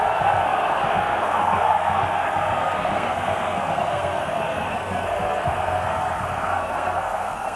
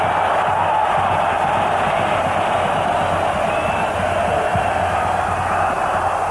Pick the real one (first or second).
second